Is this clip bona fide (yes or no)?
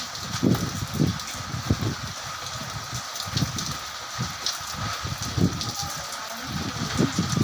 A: yes